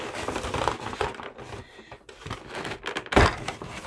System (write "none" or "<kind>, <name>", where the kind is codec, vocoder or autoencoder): none